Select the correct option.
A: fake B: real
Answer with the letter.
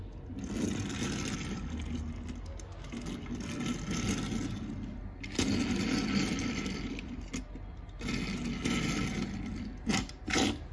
B